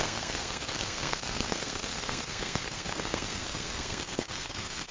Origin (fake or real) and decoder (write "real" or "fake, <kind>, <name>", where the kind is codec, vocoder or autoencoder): fake, codec, SNAC